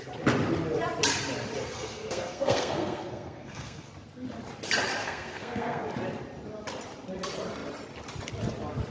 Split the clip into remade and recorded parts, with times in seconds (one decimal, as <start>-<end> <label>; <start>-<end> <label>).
0.0-1.6 recorded; 1.6-3.9 remade; 3.9-5.0 recorded; 5.0-5.8 remade; 5.8-8.9 recorded